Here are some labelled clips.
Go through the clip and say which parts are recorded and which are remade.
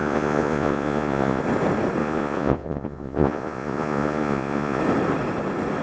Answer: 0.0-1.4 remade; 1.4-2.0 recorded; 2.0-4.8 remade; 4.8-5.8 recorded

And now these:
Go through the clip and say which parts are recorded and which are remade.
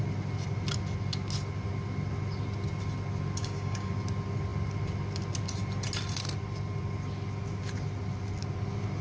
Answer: 0.0-3.4 recorded; 3.4-3.9 remade; 3.9-9.0 recorded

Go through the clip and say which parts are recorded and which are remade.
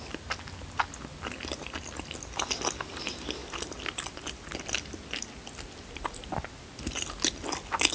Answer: 0.0-7.9 recorded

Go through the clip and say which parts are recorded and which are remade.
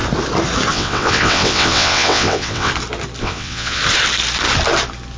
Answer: 0.0-0.7 recorded; 0.7-2.7 remade; 2.7-3.2 recorded; 3.2-3.8 remade; 3.8-5.2 recorded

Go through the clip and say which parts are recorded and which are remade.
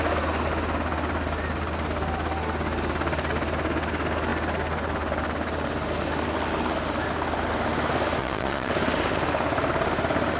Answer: 0.0-8.2 recorded; 8.2-8.7 remade; 8.7-10.4 recorded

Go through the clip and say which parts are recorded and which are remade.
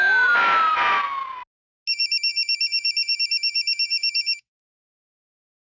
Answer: 0.0-5.7 recorded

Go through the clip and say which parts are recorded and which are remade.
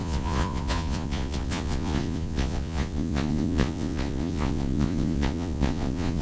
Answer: 0.0-6.2 remade